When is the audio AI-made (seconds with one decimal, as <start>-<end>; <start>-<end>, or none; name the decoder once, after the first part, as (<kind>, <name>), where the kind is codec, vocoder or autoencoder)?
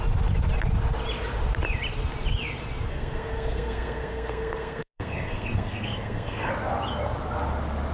2.9-6.5 (codec, SNAC)